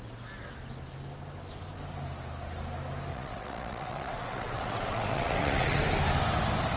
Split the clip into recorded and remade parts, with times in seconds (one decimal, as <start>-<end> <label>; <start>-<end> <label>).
0.0-3.1 recorded; 3.1-5.8 remade; 5.8-6.8 recorded